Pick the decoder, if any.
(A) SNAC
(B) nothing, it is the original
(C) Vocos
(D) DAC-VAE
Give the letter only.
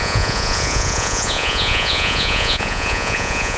C